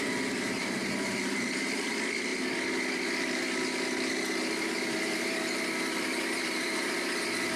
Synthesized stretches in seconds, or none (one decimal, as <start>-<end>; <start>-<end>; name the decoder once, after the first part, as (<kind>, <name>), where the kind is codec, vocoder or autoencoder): 0.0-2.3 (vocoder, BigVGAN v2); 4.5-7.6